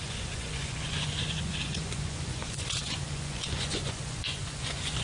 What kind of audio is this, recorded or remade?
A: remade